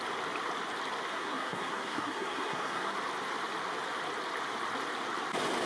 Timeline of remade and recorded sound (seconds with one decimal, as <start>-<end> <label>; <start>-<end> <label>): 0.0-1.1 recorded; 1.1-2.9 remade; 2.9-5.7 recorded